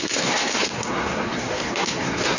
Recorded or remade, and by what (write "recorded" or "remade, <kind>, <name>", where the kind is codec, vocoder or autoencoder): remade, codec, SNAC